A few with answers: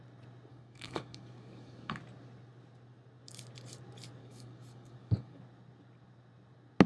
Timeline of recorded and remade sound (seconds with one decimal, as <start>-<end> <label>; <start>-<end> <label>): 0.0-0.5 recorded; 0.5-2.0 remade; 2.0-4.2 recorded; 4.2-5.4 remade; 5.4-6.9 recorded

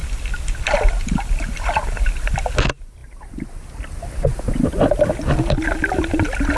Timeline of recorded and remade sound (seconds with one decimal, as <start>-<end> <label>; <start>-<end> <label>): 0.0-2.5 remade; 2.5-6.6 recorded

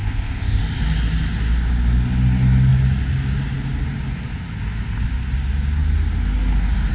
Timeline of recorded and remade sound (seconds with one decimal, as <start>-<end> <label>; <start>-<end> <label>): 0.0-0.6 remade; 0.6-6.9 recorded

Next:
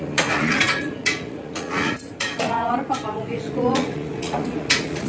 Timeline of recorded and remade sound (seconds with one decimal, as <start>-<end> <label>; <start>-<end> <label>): 0.0-5.1 remade

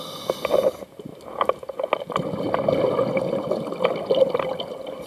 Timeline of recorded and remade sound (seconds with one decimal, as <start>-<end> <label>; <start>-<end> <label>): 0.0-5.1 recorded

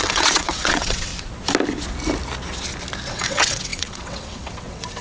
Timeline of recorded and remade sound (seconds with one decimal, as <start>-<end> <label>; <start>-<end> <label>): 0.0-1.1 remade; 1.1-3.1 recorded; 3.1-5.0 remade

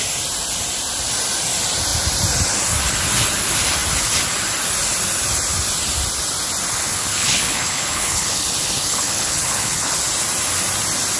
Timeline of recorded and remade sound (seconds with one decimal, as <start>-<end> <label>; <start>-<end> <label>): 0.0-6.7 recorded; 6.7-10.0 remade; 10.0-11.2 recorded

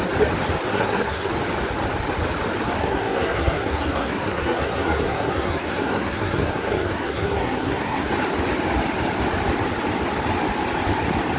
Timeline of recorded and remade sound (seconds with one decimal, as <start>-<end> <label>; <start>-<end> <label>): 0.0-0.7 recorded; 0.7-1.3 remade; 1.3-2.8 recorded; 2.8-8.1 remade; 8.1-11.4 recorded